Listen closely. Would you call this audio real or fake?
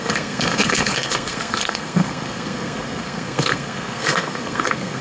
fake